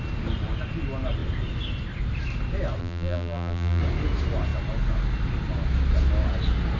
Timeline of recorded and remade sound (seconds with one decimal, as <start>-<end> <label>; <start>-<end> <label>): 0.0-2.8 recorded; 2.8-3.8 remade; 3.8-6.8 recorded